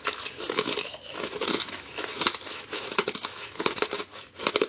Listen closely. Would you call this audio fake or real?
fake